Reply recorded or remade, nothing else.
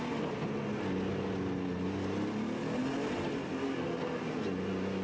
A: recorded